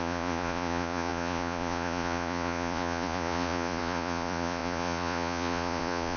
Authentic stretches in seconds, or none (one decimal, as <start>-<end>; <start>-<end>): none